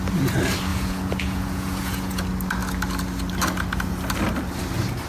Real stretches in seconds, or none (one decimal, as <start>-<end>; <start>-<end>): 0.0-0.7; 2.2-5.1